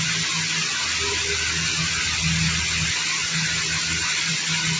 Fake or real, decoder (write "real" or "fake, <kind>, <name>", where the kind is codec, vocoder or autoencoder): real